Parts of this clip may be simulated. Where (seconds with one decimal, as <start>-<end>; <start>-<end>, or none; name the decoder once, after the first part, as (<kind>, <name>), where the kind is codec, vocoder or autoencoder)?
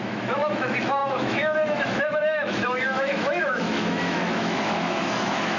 0.0-5.6 (autoencoder, DAC-VAE)